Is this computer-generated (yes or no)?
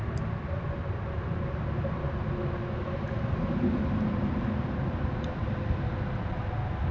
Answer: no